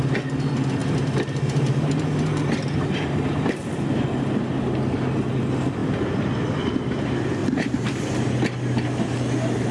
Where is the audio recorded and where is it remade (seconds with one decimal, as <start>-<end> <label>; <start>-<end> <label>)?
0.0-0.8 recorded; 0.8-3.8 remade; 3.8-7.4 recorded; 7.4-8.0 remade; 8.0-9.7 recorded